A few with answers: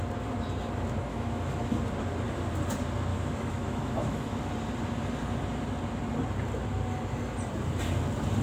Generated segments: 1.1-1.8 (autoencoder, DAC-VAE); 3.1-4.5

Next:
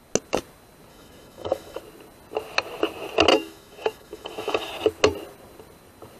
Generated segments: 0.9-1.8 (autoencoder, DAC-VAE); 3.3-4.7

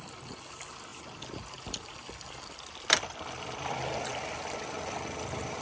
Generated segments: none

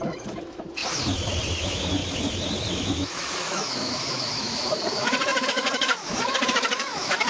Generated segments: 0.0-0.8 (autoencoder, DAC-VAE); 1.6-2.0; 2.7-7.3

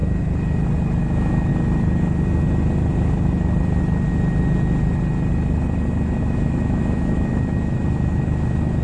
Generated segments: 1.0-1.5 (autoencoder, DAC-VAE); 6.2-8.8

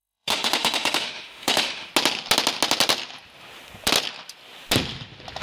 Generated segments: 0.0-1.9 (autoencoder, DAC-VAE)